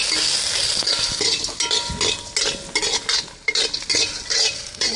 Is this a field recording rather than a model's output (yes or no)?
yes